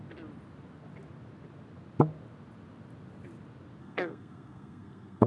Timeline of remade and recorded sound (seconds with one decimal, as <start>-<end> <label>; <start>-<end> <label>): 0.0-3.8 recorded; 3.8-5.3 remade